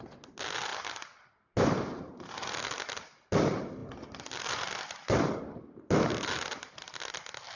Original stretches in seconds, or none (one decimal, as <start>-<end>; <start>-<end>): 0.0-7.6

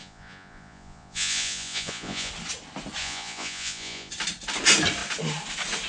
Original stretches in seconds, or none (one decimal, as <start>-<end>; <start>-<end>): 2.3-3.0; 4.1-5.9

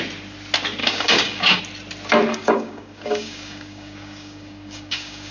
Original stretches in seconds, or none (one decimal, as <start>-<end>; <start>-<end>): 0.0-0.8; 1.6-2.3

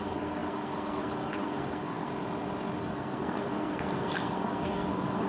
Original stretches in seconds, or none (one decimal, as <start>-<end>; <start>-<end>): 2.1-2.8

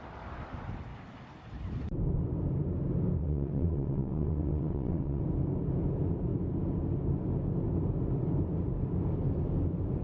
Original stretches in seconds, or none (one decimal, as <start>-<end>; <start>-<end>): 0.0-3.2; 5.2-10.0

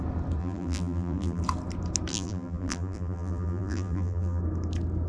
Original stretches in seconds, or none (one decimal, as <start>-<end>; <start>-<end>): 0.0-0.4; 1.4-2.1; 4.4-5.1

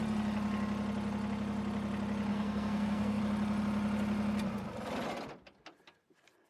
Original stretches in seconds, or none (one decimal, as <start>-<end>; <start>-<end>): 0.0-2.3; 3.2-6.5

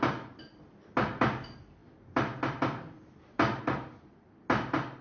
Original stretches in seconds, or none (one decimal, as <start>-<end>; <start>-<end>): 0.0-5.0